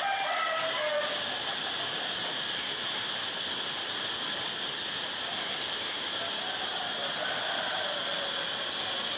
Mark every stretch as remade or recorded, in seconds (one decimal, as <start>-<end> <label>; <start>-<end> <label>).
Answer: 0.0-9.2 recorded